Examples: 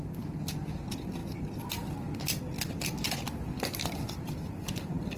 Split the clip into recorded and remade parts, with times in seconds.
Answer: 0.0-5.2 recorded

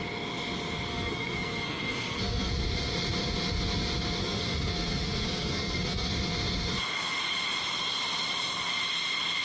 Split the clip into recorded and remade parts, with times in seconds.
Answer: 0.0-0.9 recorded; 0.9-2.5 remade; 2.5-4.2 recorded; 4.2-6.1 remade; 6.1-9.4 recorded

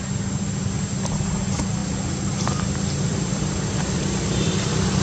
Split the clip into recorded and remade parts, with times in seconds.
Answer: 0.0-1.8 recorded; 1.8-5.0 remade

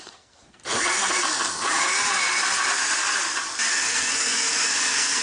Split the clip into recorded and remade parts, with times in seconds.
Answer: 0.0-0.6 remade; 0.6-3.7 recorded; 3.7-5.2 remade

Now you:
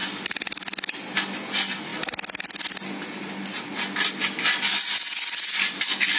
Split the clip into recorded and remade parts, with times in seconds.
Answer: 0.0-6.2 recorded

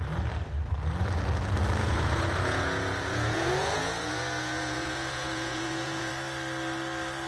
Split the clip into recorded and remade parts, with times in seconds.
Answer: 0.0-1.8 recorded; 1.8-6.1 remade; 6.1-7.3 recorded

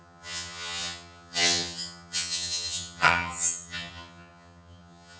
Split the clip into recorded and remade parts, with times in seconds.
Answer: 0.0-5.2 remade